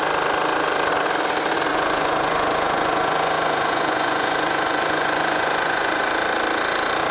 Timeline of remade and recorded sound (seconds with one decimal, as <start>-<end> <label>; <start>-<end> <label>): 0.0-1.7 recorded; 1.7-6.0 remade; 6.0-7.1 recorded